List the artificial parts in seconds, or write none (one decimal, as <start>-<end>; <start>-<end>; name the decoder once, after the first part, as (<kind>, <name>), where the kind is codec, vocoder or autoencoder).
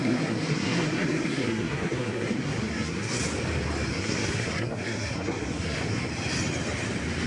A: 0.0-3.2 (codec, SNAC); 3.9-6.1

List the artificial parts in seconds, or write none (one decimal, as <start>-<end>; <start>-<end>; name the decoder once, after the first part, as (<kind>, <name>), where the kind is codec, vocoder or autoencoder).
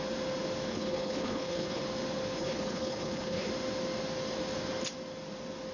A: 0.7-1.8 (codec, HILCodec); 2.4-3.5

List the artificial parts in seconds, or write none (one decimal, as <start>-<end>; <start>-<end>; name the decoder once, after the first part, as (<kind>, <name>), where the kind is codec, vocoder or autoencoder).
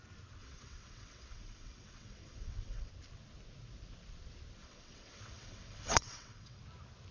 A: 0.4-2.9 (vocoder, WaveNeXt); 4.6-6.6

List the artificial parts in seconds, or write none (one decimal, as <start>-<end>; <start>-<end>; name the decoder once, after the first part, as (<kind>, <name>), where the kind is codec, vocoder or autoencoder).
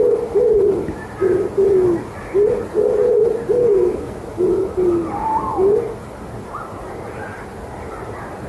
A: 3.6-4.2 (codec, SNAC)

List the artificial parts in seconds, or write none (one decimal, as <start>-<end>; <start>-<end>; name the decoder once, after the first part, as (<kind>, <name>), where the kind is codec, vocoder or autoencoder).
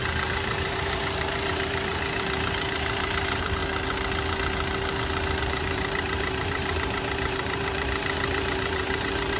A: 0.0-3.6 (vocoder, BigVGAN v2); 5.4-9.4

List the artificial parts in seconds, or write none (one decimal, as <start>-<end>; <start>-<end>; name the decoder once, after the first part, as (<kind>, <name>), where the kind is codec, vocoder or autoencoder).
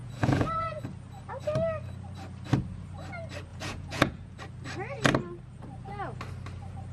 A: 0.0-0.8 (vocoder, Vocos); 3.5-4.4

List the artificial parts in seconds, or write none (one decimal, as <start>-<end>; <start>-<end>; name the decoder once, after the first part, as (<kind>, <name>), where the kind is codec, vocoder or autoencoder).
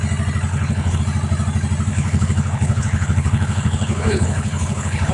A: 0.5-1.0 (codec, HILCodec); 1.9-5.1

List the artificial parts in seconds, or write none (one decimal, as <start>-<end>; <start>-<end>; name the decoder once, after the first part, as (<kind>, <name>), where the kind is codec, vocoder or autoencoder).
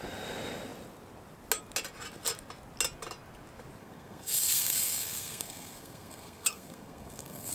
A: 3.8-7.5 (codec, SNAC)